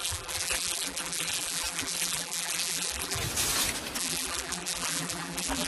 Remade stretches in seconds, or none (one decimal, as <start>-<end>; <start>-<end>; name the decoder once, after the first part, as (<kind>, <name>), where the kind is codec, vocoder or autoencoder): 0.0-3.2 (vocoder, BigVGAN v2); 4.0-5.7